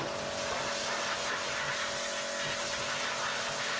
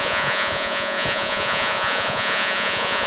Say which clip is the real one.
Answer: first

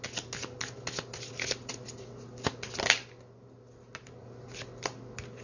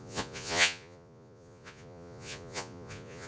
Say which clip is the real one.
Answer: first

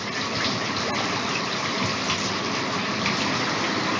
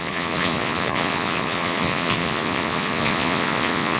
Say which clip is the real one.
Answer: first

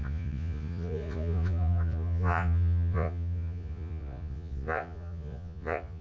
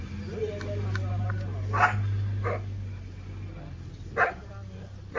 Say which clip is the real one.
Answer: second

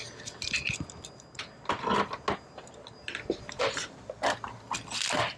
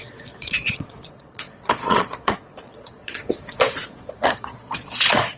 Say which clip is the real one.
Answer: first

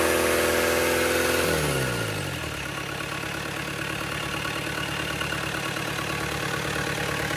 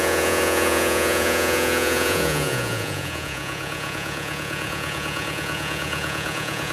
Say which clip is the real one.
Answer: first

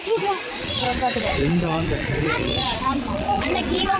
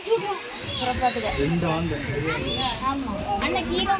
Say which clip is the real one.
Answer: second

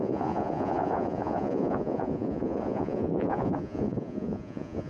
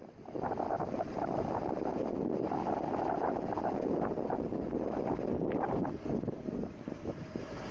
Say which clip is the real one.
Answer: second